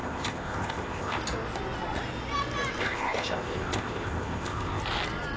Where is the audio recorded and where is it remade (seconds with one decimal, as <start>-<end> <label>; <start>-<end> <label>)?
0.0-1.2 remade; 1.2-2.8 recorded; 2.8-4.8 remade; 4.8-5.4 recorded